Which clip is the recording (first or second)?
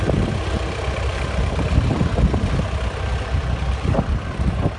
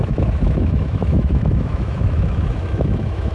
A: first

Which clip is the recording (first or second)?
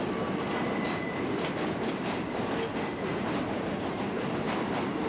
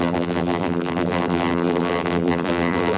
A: first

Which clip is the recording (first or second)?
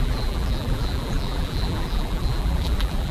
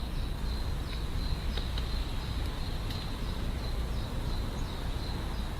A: second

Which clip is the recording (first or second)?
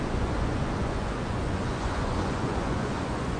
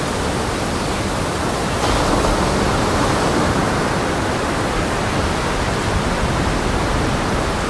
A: second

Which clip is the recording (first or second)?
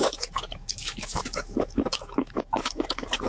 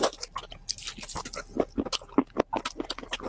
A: second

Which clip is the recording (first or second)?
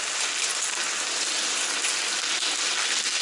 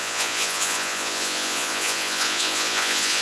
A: first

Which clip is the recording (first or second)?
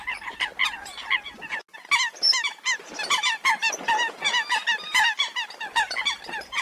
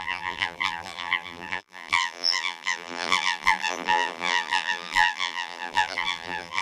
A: first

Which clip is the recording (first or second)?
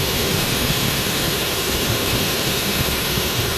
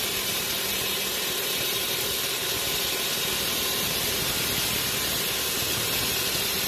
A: second